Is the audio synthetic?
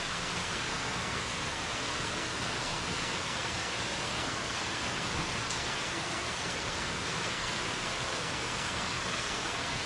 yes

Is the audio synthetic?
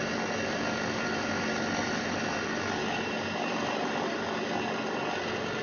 no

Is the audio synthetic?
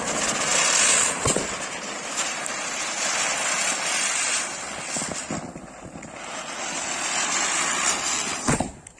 no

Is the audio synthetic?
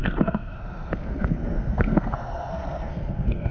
yes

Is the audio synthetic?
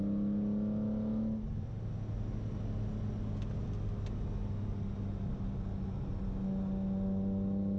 no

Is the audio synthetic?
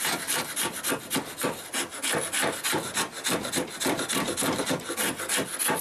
no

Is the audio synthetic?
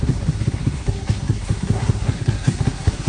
yes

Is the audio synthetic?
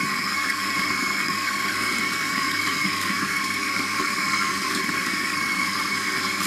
yes